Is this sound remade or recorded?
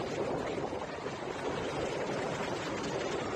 recorded